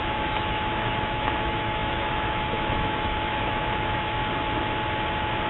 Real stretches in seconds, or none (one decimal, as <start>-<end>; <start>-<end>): 4.2-5.5